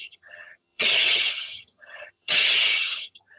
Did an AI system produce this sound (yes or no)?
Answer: yes